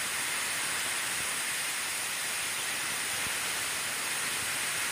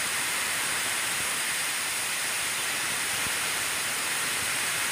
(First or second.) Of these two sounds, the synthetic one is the second